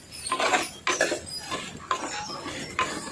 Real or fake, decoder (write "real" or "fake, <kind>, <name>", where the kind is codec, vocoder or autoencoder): real